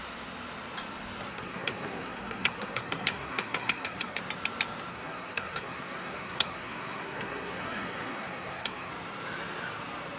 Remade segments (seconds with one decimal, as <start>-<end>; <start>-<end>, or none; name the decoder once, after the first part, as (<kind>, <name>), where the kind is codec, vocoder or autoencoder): 1.3-4.2 (codec, SNAC); 4.9-8.9